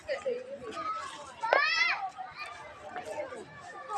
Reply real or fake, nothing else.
real